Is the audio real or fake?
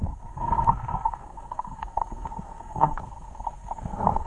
fake